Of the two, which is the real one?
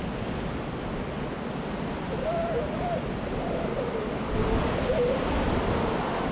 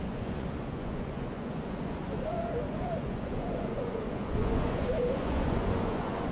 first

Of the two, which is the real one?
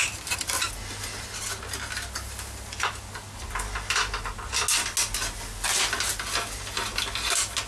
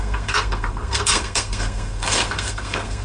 first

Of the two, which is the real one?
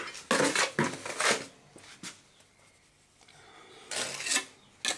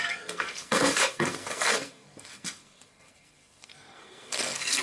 first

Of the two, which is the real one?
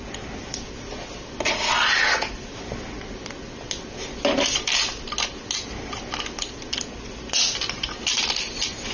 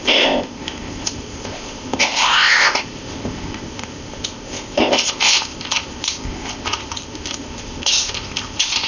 first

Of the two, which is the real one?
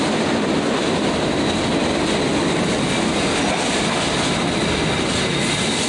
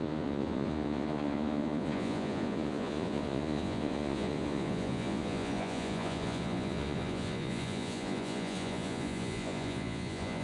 first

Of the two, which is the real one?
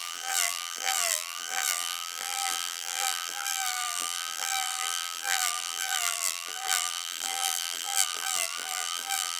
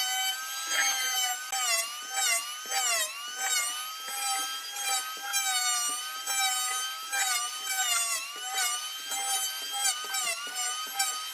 second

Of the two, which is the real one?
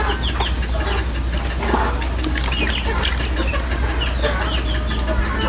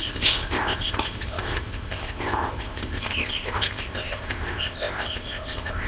first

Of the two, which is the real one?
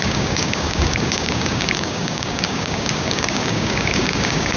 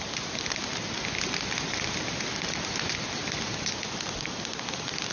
second